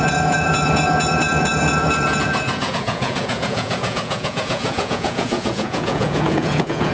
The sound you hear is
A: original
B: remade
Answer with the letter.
B